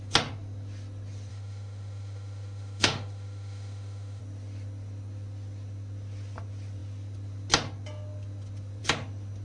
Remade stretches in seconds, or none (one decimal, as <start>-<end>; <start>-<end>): 1.3-4.2